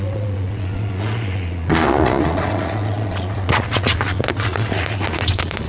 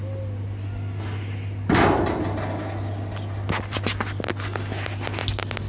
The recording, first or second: second